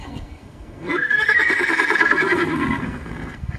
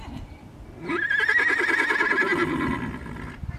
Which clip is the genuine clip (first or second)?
second